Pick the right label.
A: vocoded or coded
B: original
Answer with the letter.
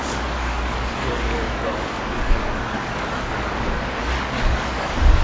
A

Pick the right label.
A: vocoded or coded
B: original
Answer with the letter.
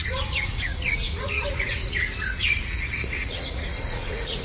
A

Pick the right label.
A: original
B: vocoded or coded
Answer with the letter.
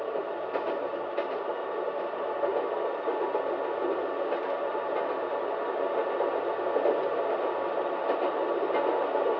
A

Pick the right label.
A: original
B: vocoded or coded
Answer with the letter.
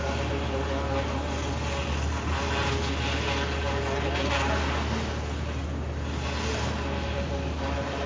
A